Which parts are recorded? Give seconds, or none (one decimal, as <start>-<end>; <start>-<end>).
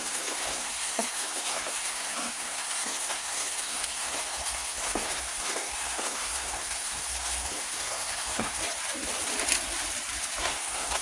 8.6-10.4